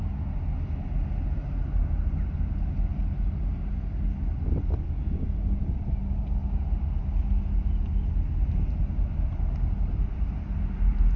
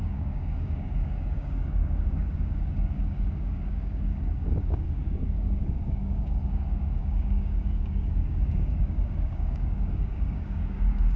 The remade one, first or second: second